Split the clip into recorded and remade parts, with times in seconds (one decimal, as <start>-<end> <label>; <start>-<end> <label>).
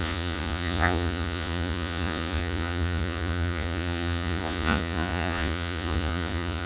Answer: 0.0-6.7 remade